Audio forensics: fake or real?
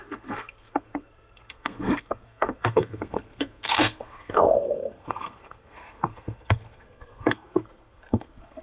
fake